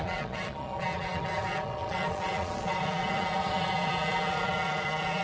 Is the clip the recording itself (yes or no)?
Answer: no